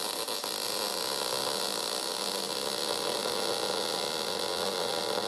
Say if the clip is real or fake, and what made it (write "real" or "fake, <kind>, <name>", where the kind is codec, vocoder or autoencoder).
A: real